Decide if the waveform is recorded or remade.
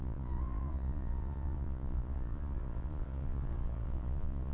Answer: remade